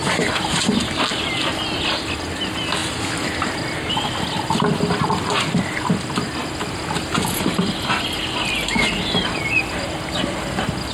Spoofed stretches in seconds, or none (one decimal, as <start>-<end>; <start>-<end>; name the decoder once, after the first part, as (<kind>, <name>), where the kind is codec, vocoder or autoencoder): none